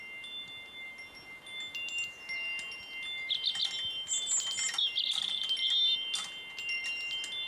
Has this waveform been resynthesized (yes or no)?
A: no